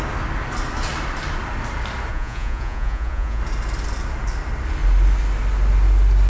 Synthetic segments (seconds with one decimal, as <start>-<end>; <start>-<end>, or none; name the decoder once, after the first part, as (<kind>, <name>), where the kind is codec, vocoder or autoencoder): 2.1-3.4 (vocoder, Vocos)